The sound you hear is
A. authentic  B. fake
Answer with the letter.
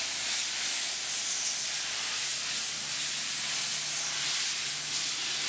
A